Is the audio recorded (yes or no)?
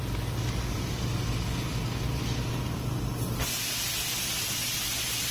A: yes